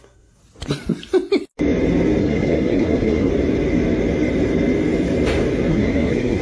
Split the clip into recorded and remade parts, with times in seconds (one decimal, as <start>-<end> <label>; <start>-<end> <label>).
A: 0.0-0.4 remade; 0.4-2.2 recorded; 2.2-3.3 remade; 3.3-5.7 recorded; 5.7-6.4 remade